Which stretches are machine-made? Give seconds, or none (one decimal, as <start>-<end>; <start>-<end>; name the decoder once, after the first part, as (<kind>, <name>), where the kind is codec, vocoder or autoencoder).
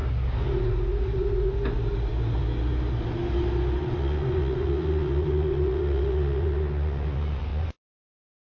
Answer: 3.8-8.5 (vocoder, Vocos)